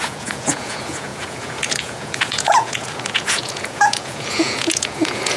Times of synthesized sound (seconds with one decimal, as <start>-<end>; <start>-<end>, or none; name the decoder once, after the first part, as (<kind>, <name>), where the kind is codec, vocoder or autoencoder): 0.0-5.4 (vocoder, Vocos)